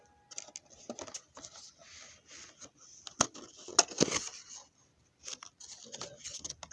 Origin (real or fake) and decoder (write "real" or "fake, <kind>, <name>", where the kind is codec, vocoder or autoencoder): real